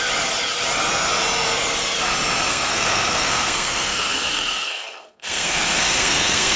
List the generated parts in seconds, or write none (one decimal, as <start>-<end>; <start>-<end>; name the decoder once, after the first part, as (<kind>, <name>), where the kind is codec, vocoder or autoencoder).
2.5-6.6 (codec, SNAC)